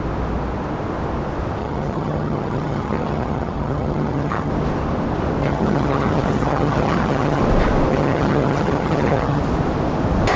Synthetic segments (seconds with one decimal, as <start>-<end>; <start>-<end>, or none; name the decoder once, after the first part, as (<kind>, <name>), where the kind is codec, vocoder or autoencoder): 1.6-4.5 (vocoder, HiFi-GAN); 5.4-7.4; 7.9-9.4